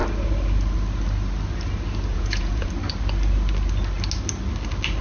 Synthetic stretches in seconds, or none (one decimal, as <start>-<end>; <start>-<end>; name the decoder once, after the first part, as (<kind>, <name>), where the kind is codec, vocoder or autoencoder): 2.1-2.7 (vocoder, Vocos)